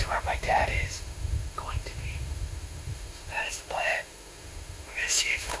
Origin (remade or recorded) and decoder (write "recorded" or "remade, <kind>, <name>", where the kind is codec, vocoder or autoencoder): remade, autoencoder, DAC-VAE